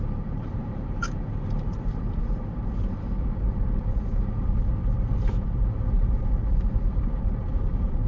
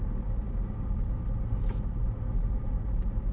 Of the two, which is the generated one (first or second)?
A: first